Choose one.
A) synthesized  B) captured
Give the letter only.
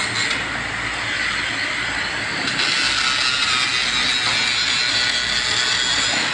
B